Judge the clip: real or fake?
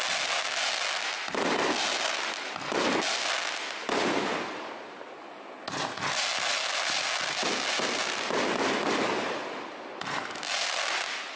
real